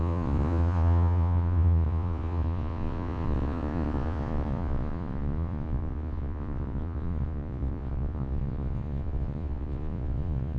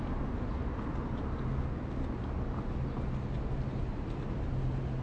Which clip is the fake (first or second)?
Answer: first